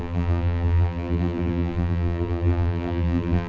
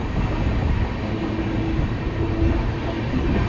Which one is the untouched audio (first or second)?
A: second